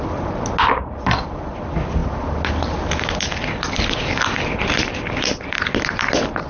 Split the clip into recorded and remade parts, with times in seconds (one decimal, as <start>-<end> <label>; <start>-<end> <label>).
0.0-6.5 recorded